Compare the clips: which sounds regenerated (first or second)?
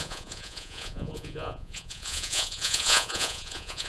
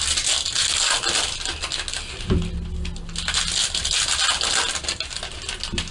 first